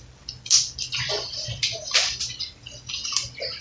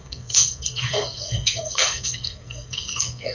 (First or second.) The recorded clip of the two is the first